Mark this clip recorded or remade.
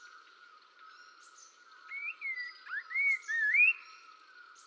recorded